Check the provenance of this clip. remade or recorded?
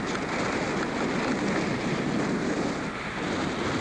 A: recorded